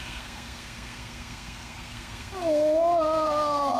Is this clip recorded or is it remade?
remade